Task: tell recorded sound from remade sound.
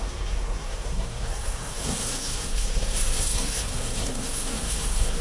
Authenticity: remade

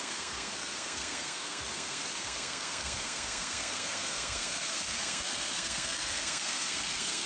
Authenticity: remade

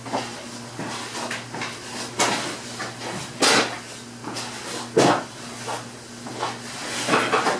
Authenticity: recorded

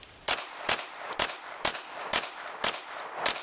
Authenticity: remade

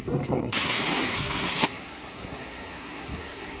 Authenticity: remade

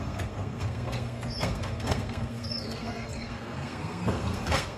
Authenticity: remade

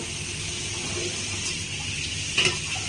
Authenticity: recorded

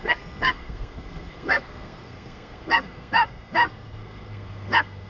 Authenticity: remade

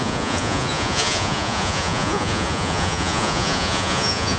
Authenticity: remade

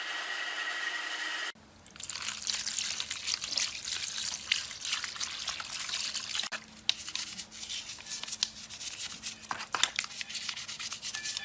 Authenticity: recorded